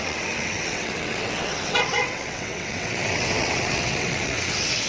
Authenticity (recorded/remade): remade